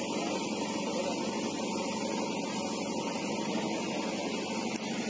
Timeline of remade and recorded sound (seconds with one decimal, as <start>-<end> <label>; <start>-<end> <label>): 0.0-5.1 recorded